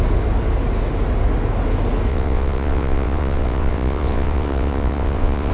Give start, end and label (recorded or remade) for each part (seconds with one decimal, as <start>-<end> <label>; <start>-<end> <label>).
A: 0.0-2.1 recorded; 2.1-5.5 remade